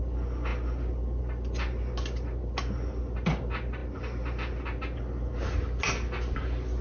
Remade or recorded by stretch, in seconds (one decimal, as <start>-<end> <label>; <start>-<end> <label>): 0.0-6.8 recorded